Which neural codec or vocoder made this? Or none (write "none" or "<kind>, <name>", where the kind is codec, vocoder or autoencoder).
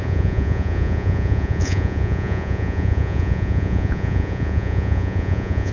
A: vocoder, Vocos